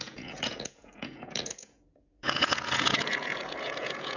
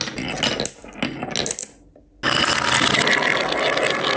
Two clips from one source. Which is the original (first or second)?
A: second